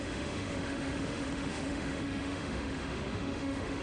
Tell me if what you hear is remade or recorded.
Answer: remade